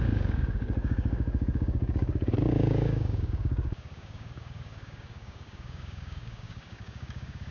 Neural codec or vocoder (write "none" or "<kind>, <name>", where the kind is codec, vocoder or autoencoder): codec, DAC